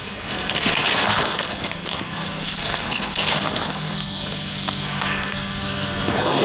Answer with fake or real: fake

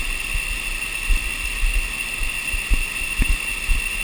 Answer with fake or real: real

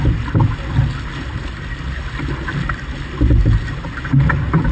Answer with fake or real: real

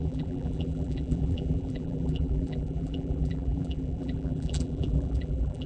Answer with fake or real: fake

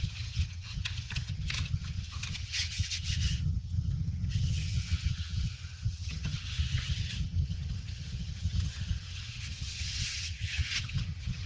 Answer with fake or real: fake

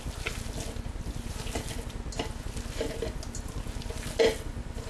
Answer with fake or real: real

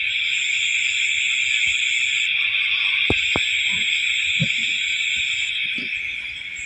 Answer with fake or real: real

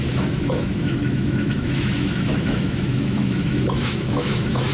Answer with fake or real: fake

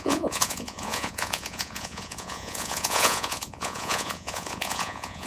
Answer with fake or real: fake